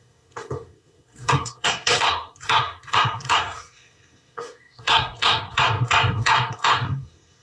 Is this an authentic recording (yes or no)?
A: no